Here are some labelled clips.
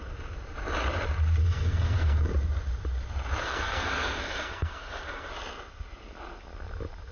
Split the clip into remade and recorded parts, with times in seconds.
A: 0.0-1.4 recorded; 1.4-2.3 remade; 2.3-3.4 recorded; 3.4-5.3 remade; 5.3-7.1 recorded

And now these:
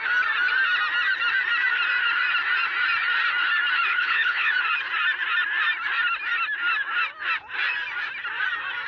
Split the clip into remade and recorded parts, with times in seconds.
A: 0.0-3.9 recorded; 3.9-4.5 remade; 4.5-8.9 recorded